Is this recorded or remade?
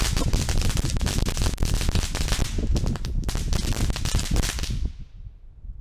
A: recorded